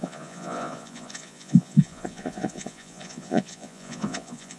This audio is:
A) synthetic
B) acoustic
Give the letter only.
A